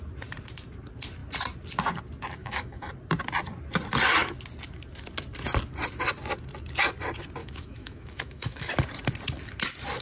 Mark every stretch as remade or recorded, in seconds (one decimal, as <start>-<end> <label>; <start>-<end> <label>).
0.0-2.4 recorded; 2.4-2.9 remade; 2.9-7.4 recorded; 7.4-8.7 remade; 8.7-10.0 recorded